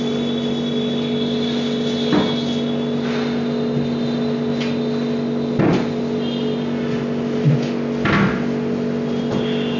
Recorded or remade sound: recorded